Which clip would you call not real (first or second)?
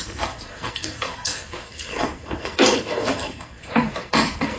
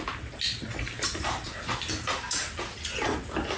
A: first